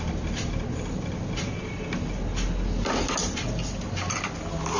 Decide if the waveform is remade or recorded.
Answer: recorded